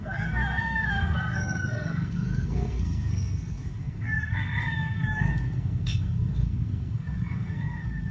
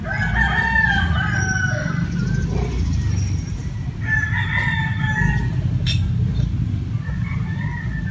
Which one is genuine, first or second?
second